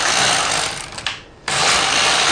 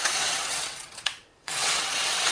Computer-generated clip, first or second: second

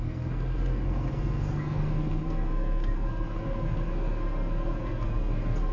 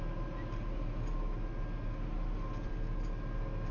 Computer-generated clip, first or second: first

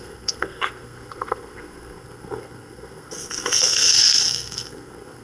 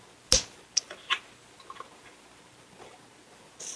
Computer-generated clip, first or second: first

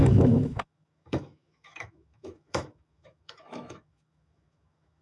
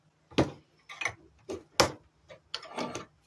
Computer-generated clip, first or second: first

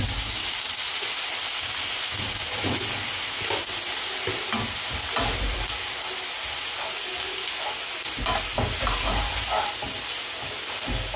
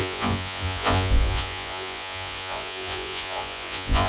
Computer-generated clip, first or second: second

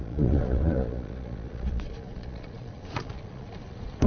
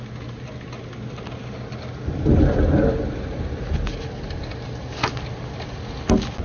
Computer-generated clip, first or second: first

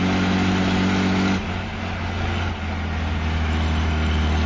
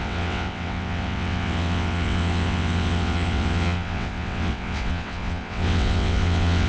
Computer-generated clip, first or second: second